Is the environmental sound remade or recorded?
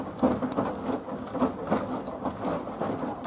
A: recorded